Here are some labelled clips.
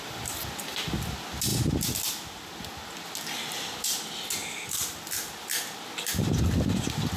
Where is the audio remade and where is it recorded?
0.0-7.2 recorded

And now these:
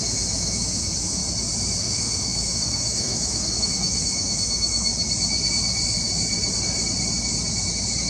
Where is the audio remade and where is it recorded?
0.0-1.2 remade; 1.2-1.8 recorded; 1.8-4.9 remade; 4.9-8.1 recorded

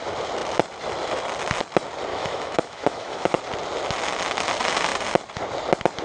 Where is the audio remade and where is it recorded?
0.0-2.1 recorded; 2.1-3.4 remade; 3.4-6.0 recorded

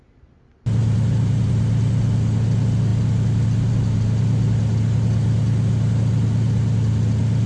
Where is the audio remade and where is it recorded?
0.0-0.8 recorded; 0.8-1.5 remade; 1.5-7.5 recorded

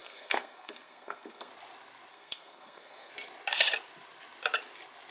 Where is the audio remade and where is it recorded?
0.0-1.5 remade; 1.5-2.1 recorded; 2.1-3.1 remade; 3.1-5.1 recorded

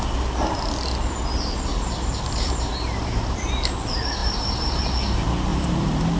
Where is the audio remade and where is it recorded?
0.0-1.7 recorded; 1.7-3.4 remade; 3.4-4.2 recorded; 4.2-4.8 remade; 4.8-5.5 recorded; 5.5-6.2 remade

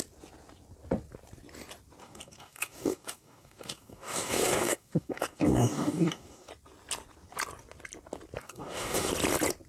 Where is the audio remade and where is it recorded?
0.0-2.0 recorded; 2.0-6.5 remade; 6.5-8.4 recorded; 8.4-9.1 remade; 9.1-9.7 recorded